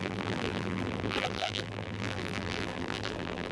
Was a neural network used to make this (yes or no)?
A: yes